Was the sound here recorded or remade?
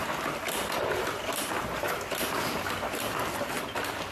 recorded